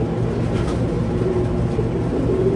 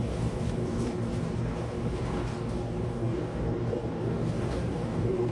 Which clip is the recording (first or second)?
first